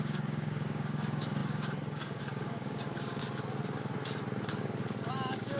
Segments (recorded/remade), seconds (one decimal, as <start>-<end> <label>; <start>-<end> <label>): 0.0-3.2 remade; 3.2-5.1 recorded; 5.1-5.6 remade